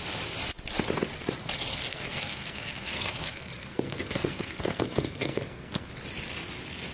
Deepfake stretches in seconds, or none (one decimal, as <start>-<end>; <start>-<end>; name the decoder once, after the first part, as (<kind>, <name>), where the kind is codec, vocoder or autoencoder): 1.8-5.9 (codec, SNAC)